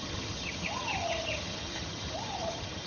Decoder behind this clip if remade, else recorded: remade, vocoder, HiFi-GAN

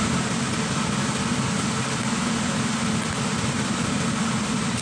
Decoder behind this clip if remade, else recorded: recorded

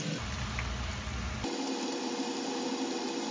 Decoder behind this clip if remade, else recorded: recorded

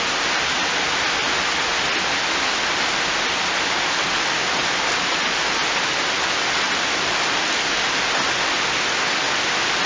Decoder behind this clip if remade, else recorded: recorded